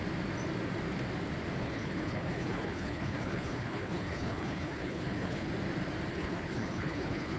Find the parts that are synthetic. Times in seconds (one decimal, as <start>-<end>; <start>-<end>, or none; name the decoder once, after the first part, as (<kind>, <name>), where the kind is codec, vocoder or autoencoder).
1.6-5.5 (codec, HILCodec); 6.1-7.4